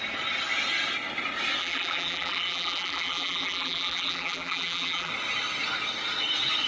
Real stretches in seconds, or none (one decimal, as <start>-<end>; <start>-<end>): 0.0-1.6; 5.1-6.7